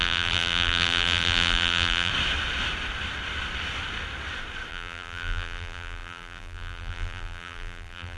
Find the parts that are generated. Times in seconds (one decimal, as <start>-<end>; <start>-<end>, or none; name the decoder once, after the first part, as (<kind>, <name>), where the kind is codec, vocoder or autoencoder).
0.0-2.1 (vocoder, BigVGAN v2); 4.7-8.2